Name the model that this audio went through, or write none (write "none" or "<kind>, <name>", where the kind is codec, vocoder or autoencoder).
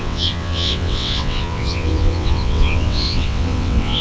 vocoder, WaveNeXt